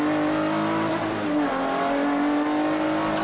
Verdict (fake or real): real